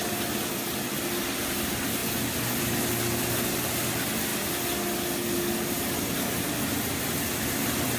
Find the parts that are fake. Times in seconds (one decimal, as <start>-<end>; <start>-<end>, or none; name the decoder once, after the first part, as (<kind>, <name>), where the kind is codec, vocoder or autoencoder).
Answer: none